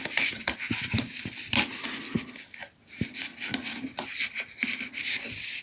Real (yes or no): yes